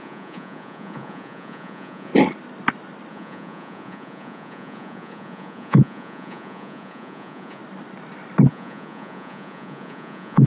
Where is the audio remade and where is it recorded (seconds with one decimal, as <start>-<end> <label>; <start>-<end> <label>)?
0.0-2.1 remade; 2.1-3.1 recorded; 3.1-7.6 remade; 7.6-8.5 recorded; 8.5-10.5 remade